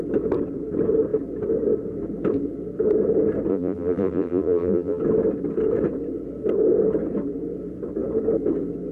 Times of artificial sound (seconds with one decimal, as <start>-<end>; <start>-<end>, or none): 3.5-5.0